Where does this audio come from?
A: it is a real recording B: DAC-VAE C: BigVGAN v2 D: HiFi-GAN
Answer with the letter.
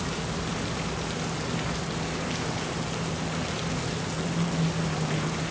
A